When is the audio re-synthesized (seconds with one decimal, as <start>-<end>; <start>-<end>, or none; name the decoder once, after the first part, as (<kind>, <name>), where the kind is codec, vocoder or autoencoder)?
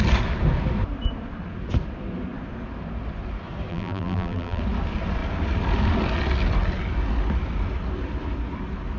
3.7-4.6 (vocoder, BigVGAN v2)